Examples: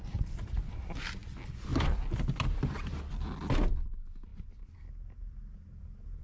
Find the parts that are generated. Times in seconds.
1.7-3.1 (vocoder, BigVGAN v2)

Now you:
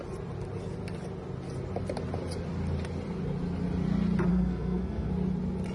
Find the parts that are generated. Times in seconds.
4.3-5.1 (codec, SNAC)

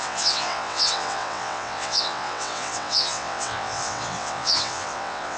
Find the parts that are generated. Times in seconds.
0.0-5.4 (vocoder, WaveNeXt)

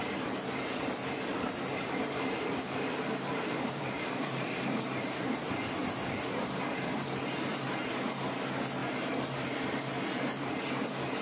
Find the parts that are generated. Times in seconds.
1.3-5.4 (vocoder, BigVGAN v2)

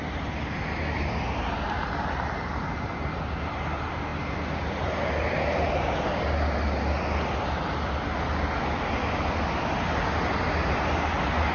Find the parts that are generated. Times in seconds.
none

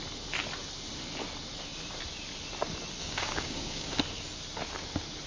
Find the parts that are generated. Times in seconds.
3.0-4.0 (codec, DAC)

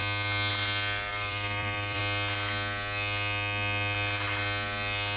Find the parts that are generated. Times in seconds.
1.1-2.0 (vocoder, BigVGAN v2)